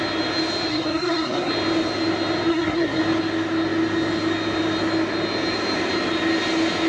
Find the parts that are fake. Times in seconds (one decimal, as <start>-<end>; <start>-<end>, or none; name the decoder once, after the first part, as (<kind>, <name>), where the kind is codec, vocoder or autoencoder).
0.7-1.5 (codec, SNAC); 2.5-3.0